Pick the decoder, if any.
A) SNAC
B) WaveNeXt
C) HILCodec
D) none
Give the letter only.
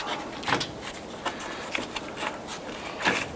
D